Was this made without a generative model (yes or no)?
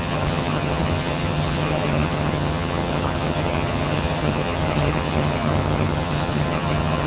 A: no